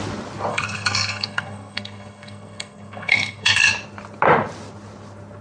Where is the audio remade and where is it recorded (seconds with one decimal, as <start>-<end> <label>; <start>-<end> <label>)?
0.0-0.5 recorded; 0.5-3.7 remade; 3.7-5.4 recorded